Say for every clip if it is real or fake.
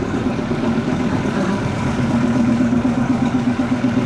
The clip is fake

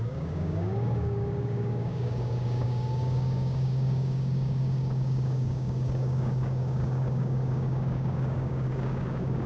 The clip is fake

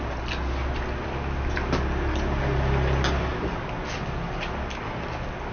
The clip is real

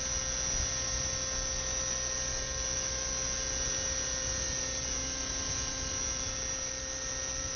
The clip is real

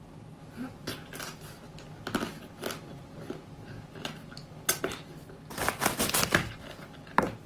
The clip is real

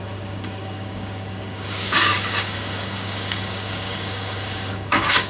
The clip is fake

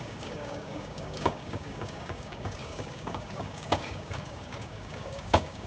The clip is fake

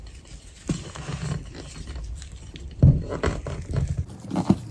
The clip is real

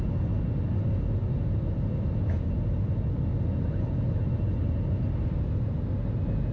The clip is real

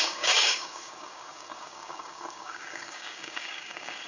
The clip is fake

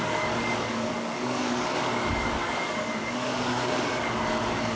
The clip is fake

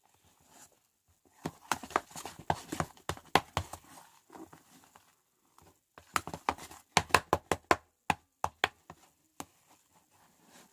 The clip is real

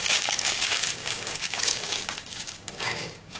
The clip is fake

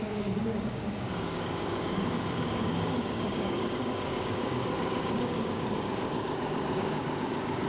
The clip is fake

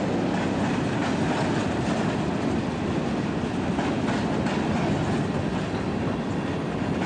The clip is real